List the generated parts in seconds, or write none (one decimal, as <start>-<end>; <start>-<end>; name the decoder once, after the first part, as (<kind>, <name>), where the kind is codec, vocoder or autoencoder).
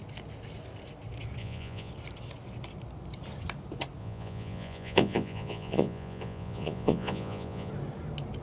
1.4-1.9 (vocoder, Vocos); 4.0-7.7